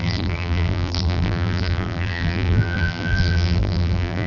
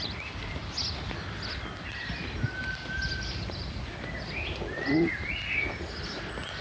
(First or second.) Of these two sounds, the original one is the second